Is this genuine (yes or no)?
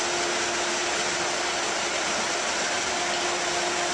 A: yes